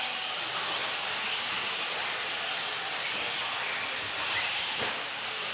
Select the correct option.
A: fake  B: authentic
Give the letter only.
B